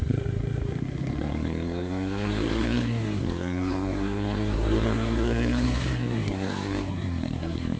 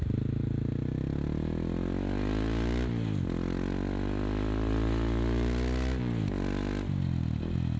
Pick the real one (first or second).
second